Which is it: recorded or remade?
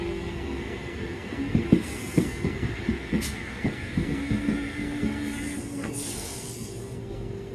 remade